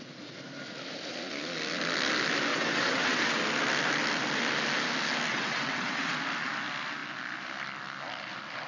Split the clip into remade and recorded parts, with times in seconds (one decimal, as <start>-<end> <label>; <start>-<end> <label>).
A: 0.0-2.5 recorded; 2.5-3.4 remade; 3.4-5.3 recorded; 5.3-6.1 remade; 6.1-8.7 recorded